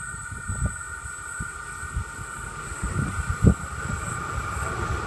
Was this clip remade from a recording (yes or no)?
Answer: no